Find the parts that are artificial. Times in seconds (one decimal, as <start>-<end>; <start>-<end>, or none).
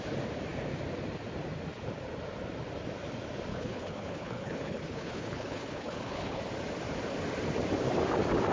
3.5-6.4